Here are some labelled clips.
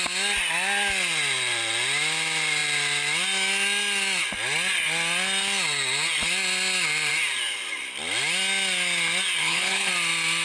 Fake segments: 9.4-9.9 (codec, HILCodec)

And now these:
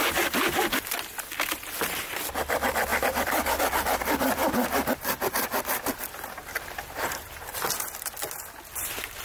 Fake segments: 0.0-4.4 (vocoder, BigVGAN v2); 6.6-9.2